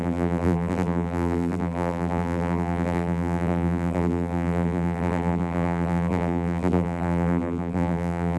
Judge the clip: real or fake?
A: fake